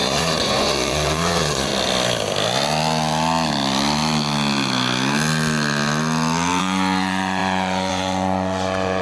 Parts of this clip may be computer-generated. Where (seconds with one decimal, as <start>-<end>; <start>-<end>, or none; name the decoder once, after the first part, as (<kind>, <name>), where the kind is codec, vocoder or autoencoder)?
0.0-1.7 (vocoder, Vocos); 6.6-9.0